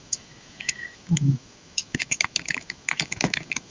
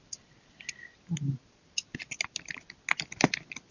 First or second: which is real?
second